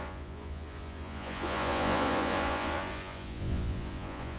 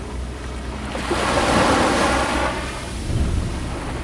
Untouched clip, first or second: second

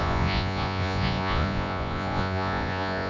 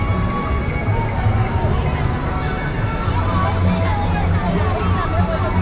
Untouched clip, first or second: second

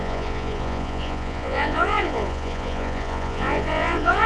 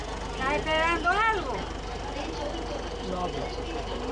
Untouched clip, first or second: second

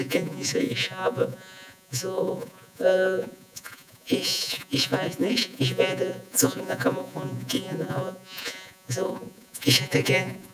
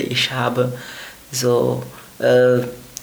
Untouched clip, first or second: second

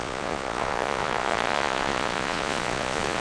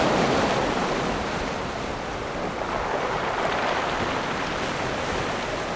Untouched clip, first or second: second